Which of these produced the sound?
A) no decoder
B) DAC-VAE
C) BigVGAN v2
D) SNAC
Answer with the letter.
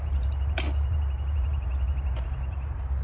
C